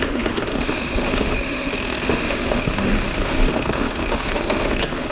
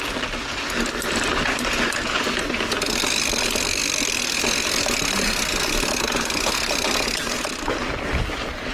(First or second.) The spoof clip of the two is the first